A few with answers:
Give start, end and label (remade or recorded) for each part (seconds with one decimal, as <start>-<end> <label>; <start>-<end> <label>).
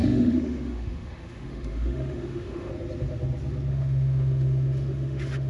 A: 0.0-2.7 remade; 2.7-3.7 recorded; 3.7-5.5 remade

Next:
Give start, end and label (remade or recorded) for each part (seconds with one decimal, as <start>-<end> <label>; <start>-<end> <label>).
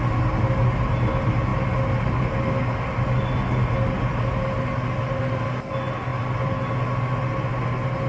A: 0.0-8.1 recorded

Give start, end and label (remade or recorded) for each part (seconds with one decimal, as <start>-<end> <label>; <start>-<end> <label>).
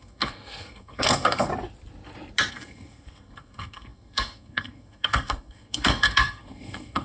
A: 0.0-1.5 remade; 1.5-2.5 recorded; 2.5-7.0 remade